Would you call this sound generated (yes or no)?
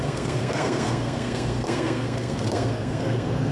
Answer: yes